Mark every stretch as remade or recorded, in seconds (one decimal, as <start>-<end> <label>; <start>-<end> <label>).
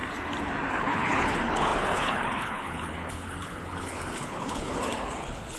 0.0-0.7 recorded; 0.7-5.6 remade